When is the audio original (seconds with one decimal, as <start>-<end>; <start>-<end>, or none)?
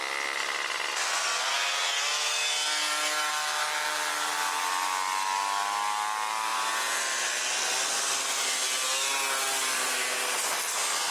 0.0-6.5; 7.0-11.1